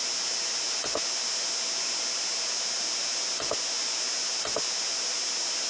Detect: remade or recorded recorded